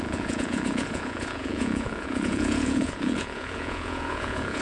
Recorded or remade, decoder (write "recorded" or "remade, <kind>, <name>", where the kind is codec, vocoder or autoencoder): remade, vocoder, Vocos